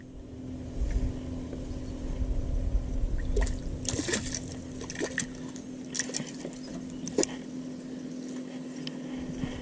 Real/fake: real